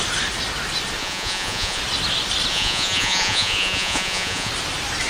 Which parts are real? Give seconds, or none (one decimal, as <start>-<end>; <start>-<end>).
0.0-1.0; 1.8-2.5; 4.5-5.1